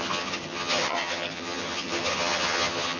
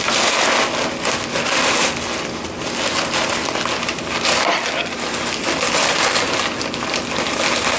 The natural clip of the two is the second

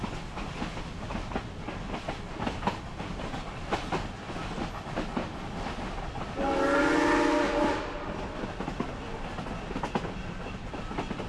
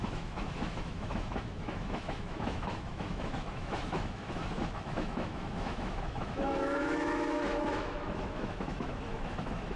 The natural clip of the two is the first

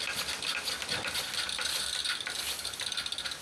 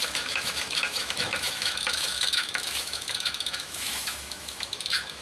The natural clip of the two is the first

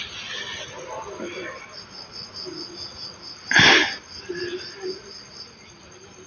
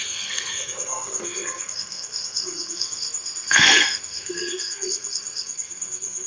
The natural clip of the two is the first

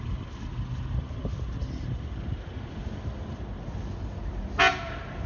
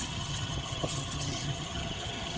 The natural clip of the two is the first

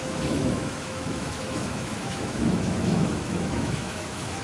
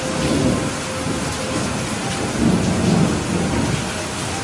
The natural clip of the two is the second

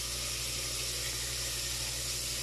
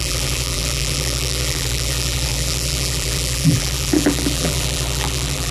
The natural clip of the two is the first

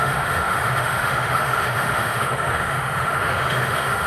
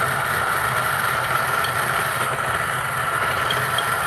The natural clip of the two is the second